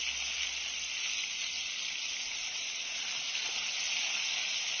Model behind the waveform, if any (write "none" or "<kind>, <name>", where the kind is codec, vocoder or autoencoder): none